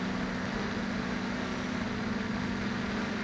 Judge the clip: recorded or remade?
recorded